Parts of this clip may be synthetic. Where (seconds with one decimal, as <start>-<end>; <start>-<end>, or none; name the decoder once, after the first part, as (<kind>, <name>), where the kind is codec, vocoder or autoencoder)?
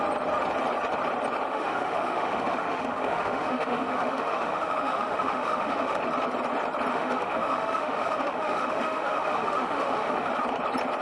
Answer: 1.5-6.0 (autoencoder, DAC-VAE); 6.9-10.3